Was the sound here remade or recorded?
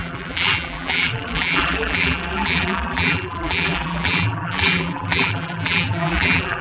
remade